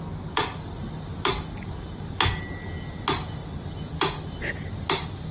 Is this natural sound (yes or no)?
yes